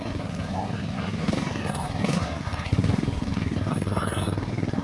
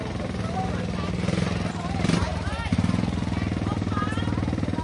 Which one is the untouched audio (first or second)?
second